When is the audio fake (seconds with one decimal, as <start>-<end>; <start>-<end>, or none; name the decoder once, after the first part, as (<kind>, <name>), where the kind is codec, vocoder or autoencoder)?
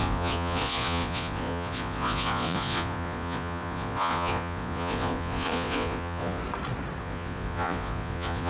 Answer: 0.0-6.4 (vocoder, Vocos); 7.0-8.5